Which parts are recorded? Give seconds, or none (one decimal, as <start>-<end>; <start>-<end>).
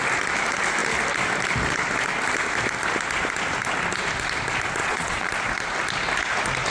0.0-4.8; 5.3-6.7